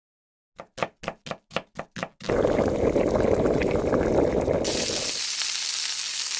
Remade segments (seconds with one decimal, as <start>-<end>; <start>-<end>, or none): none